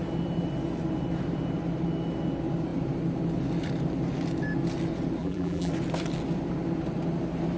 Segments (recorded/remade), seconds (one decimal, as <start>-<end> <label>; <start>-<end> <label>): 0.0-5.2 recorded; 5.2-5.7 remade; 5.7-7.6 recorded